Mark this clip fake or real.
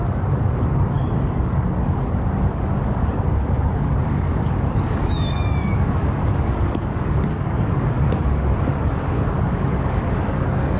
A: fake